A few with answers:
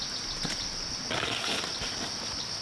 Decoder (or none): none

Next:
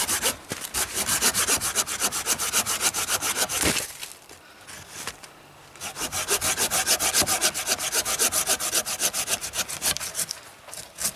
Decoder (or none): none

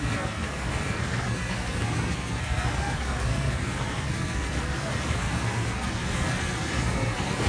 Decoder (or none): codec, SNAC